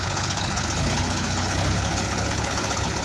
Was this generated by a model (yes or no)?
yes